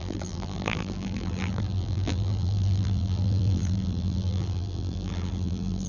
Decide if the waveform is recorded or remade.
remade